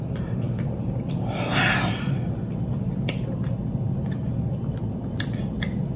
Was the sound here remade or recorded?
recorded